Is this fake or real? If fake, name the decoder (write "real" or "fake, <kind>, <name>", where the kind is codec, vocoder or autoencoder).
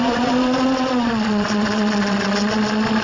fake, vocoder, Vocos